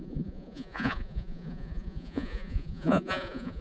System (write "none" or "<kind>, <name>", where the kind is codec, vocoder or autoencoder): vocoder, Vocos